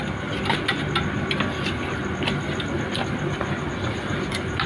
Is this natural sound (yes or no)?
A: yes